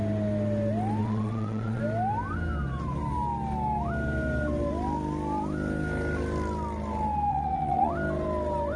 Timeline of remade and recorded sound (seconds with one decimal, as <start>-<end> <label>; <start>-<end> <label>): 0.0-1.0 recorded; 1.0-1.8 remade; 1.8-7.3 recorded; 7.3-7.9 remade; 7.9-8.8 recorded